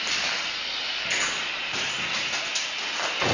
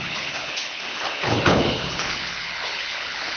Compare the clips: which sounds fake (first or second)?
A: second